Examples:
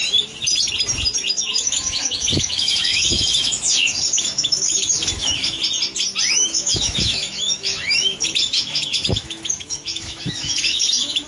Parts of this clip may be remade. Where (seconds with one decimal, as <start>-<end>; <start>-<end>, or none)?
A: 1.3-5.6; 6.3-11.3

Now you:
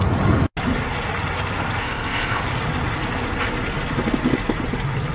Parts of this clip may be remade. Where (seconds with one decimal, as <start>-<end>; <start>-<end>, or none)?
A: 1.8-2.4

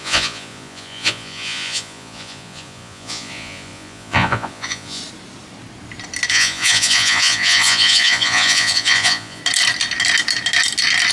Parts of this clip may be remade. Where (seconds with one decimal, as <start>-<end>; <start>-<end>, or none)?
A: 0.0-5.0; 6.3-9.4

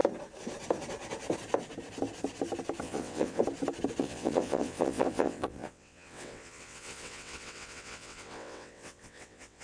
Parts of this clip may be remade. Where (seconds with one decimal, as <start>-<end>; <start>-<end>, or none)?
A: 2.8-3.4; 4.0-9.6

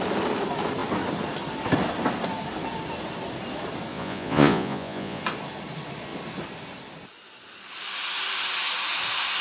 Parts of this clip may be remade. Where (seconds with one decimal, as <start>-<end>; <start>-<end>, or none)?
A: 3.9-5.2

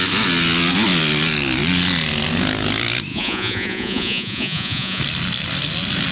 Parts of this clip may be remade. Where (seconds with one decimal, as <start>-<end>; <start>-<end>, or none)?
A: 3.1-5.0